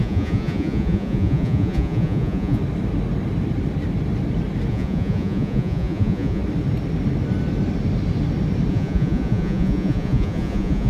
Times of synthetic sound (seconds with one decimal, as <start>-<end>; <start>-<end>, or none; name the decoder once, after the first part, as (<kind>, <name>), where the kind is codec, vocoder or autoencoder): 0.0-2.6 (vocoder, Vocos); 4.7-6.4; 8.7-10.9